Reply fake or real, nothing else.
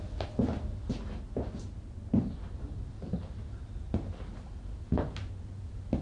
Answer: real